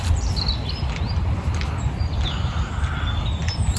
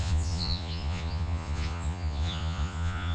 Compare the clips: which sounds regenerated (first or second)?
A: second